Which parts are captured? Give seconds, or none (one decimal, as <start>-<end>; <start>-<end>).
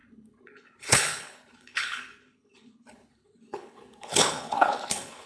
none